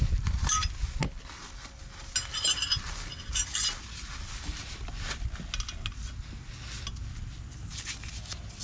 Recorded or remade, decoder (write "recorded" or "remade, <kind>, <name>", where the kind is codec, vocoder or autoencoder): recorded